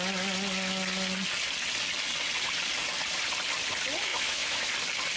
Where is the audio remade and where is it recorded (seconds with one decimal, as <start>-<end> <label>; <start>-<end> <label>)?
0.0-4.1 recorded; 4.1-4.7 remade; 4.7-5.2 recorded